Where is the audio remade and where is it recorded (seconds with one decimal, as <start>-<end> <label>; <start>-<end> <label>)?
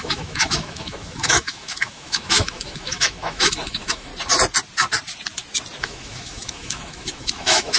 0.0-4.1 remade; 4.1-5.8 recorded; 5.8-7.8 remade